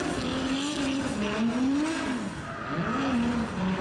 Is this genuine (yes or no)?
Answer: yes